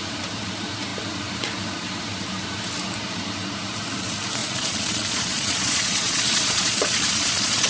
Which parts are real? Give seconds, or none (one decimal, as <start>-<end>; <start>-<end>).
0.0-4.4